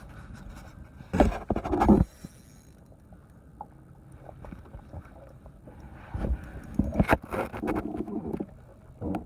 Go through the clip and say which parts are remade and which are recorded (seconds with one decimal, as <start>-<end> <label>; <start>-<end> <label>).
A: 0.0-9.3 recorded